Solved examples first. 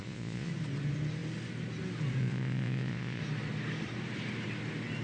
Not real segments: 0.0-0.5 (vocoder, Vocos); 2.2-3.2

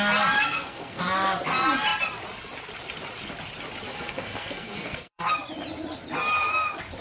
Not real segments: 0.4-1.0 (codec, SNAC); 3.9-5.3

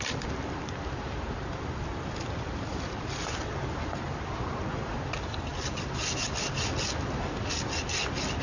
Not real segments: none